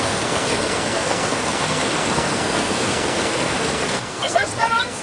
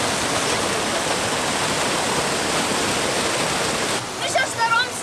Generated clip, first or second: first